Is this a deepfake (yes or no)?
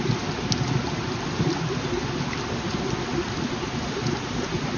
no